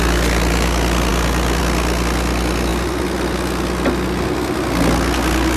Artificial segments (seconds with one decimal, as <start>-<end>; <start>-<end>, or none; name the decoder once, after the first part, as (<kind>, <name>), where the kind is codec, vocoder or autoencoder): none